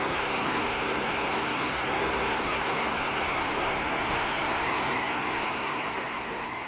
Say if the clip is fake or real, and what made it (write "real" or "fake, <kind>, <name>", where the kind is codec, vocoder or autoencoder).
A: fake, codec, SNAC